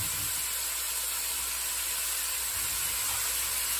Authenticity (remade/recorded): recorded